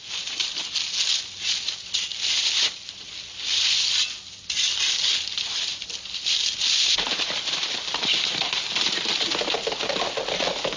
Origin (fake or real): real